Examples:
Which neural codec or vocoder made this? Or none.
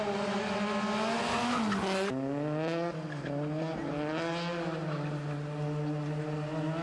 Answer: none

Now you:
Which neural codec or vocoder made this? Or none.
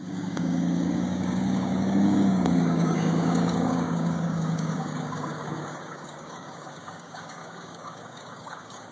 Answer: codec, DAC